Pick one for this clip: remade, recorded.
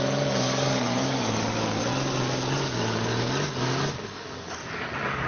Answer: remade